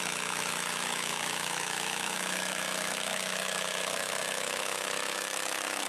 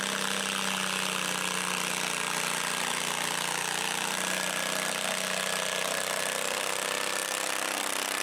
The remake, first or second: first